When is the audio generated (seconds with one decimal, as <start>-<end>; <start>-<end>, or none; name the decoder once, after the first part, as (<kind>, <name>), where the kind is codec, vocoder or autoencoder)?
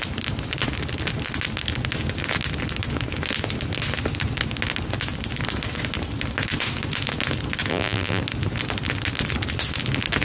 7.7-8.2 (vocoder, BigVGAN v2)